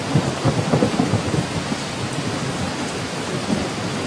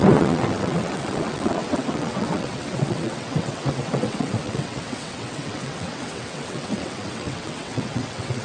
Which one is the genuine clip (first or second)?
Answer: first